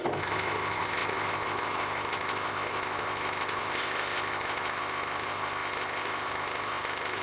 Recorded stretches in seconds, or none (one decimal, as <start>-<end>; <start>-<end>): none